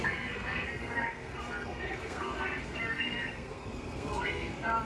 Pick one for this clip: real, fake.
fake